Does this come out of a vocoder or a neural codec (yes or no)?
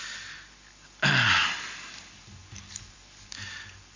no